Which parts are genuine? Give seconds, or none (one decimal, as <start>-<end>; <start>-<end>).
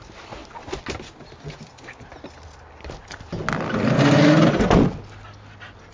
0.0-5.9